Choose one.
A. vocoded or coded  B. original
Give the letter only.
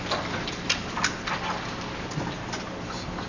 B